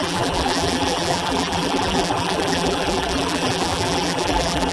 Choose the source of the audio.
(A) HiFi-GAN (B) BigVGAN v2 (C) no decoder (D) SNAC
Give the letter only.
B